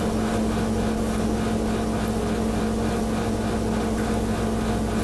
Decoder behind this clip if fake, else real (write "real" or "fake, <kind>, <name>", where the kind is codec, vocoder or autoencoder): real